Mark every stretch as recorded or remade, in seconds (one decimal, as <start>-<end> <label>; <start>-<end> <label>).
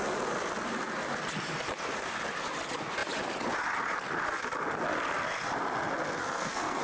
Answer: 0.0-6.2 recorded; 6.2-6.8 remade